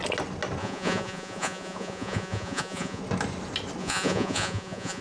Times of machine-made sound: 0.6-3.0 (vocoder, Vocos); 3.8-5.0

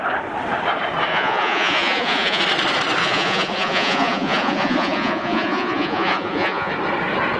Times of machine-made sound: 1.1-2.4 (vocoder, Vocos); 3.0-6.7

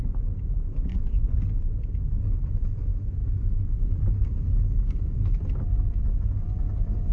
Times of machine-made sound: 0.9-1.4 (vocoder, Vocos)